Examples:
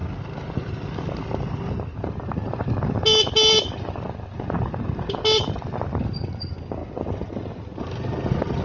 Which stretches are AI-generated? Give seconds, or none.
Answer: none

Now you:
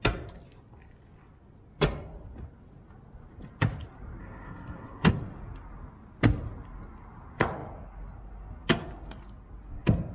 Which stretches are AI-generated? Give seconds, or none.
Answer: 4.2-5.1 (codec, SNAC)

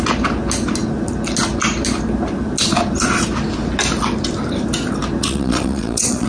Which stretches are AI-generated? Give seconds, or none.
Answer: 5.2-6.3 (vocoder, WaveNeXt)

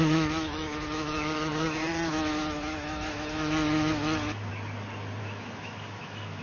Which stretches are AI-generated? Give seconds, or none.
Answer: 0.0-1.5 (autoencoder, DAC-VAE); 2.1-4.5; 5.2-6.4

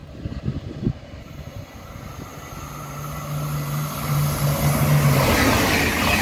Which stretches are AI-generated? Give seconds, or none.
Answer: none

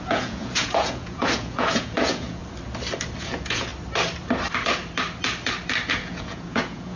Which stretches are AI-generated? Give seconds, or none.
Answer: 0.0-2.4 (vocoder, Vocos); 3.2-3.7; 5.9-7.0